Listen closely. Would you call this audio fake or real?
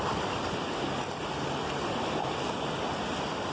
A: real